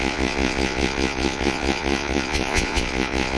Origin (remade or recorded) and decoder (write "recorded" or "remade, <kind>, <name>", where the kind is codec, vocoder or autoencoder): remade, vocoder, Vocos